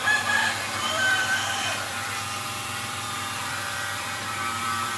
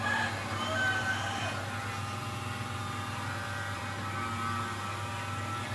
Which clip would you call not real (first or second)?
first